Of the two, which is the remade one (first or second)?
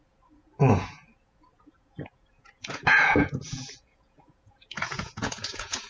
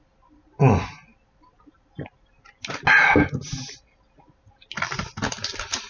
first